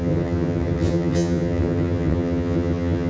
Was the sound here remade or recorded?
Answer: remade